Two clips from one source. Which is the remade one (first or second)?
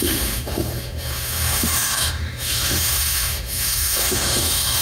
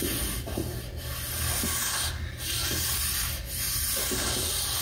first